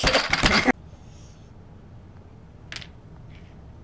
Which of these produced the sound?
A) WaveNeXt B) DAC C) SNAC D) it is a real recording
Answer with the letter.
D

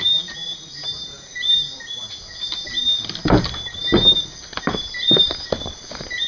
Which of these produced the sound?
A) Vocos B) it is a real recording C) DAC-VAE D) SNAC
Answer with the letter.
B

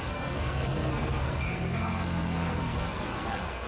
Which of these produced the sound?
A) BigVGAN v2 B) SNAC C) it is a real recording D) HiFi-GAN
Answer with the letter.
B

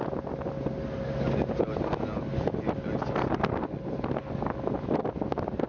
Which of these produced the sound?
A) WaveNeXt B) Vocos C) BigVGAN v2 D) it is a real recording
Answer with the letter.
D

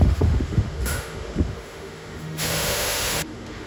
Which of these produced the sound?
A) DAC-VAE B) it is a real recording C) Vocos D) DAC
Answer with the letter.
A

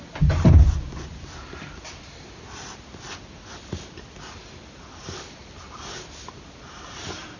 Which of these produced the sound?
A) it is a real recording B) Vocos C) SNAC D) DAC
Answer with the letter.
A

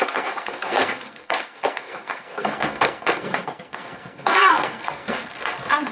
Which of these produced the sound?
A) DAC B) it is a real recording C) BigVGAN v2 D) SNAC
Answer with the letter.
D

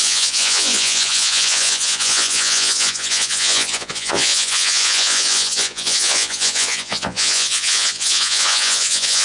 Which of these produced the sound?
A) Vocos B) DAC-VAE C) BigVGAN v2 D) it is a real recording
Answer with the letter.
A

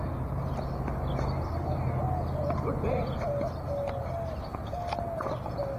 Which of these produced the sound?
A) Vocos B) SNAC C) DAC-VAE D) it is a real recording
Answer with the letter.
D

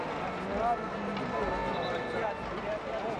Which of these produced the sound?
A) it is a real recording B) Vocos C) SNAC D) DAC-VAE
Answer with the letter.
A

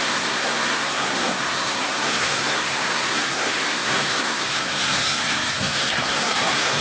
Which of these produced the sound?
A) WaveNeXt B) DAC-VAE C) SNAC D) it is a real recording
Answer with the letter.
C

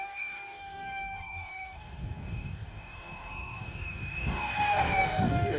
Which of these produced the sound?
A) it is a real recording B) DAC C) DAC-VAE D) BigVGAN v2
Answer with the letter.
B